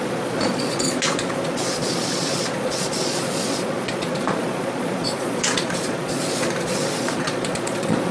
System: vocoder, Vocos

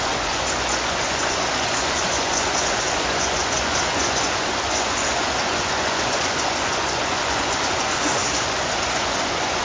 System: vocoder, Vocos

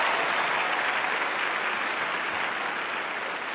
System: none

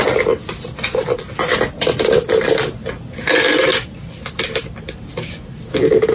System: none